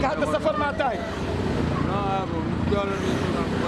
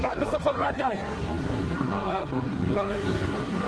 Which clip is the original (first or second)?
first